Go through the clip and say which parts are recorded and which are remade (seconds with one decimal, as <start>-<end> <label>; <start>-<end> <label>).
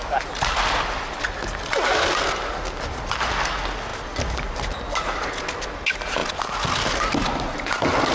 0.0-8.1 recorded